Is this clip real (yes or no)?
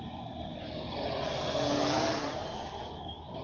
yes